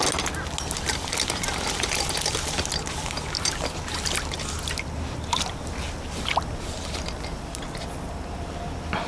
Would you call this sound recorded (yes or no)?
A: yes